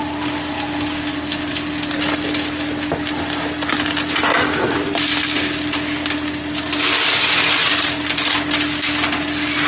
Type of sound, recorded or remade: recorded